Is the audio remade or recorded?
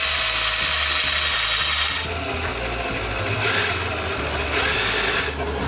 recorded